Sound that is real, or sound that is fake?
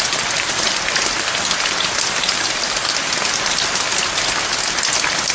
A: real